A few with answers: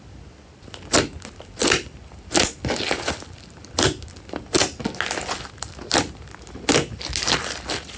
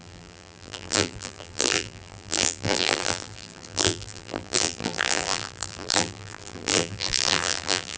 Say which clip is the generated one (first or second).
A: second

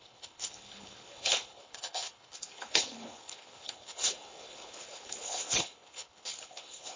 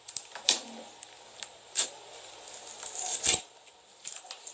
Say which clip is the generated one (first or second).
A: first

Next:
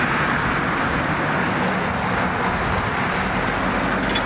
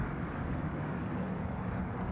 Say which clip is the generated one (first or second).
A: second